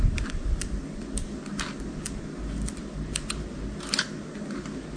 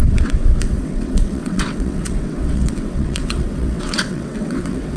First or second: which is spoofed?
second